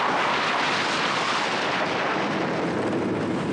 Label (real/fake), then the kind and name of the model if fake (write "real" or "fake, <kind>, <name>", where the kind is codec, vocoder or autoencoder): real